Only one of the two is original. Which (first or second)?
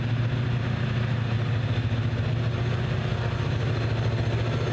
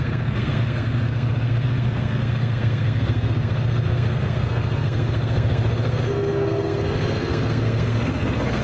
first